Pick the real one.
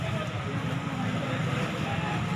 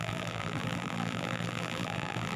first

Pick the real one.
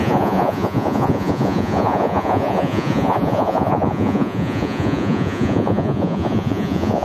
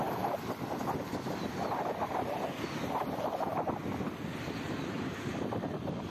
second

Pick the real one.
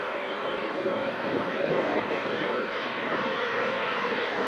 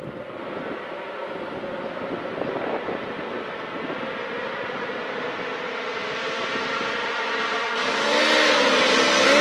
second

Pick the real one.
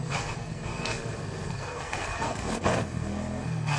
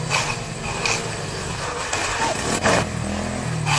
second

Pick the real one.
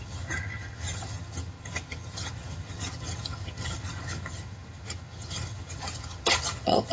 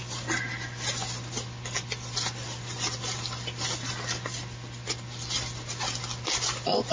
second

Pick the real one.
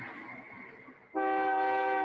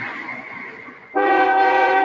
first